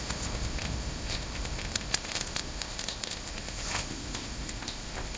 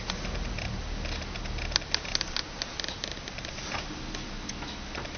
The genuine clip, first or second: second